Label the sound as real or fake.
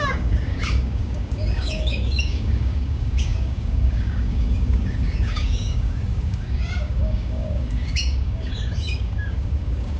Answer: fake